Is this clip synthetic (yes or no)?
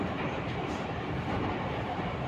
yes